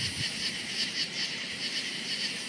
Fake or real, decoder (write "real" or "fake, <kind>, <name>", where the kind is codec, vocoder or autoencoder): real